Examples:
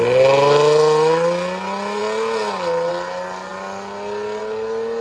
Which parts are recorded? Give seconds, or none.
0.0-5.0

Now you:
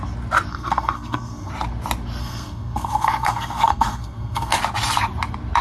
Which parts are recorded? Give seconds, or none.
0.0-0.5; 1.5-2.2; 4.5-5.6

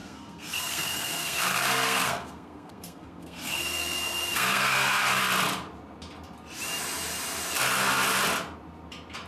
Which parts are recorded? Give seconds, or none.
5.2-9.3